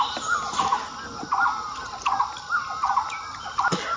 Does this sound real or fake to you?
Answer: real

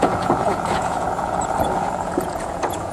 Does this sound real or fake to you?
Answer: fake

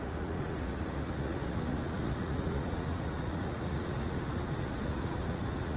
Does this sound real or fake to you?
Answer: fake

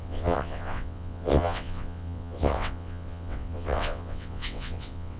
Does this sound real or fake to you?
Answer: fake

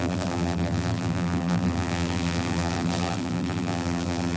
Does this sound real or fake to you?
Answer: fake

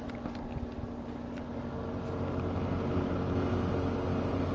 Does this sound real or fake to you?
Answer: real